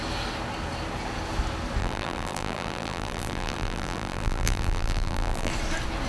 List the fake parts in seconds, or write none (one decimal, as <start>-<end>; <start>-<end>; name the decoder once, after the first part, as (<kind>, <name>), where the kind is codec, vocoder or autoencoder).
1.8-5.5 (vocoder, BigVGAN v2)